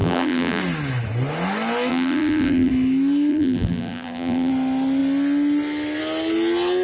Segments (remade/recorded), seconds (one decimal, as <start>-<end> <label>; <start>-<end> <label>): 0.0-0.6 remade; 0.6-1.9 recorded; 1.9-2.7 remade; 2.7-3.3 recorded; 3.3-4.5 remade; 4.5-6.8 recorded